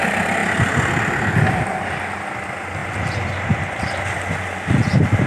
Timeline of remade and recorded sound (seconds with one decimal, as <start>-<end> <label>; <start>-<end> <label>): 0.0-5.3 recorded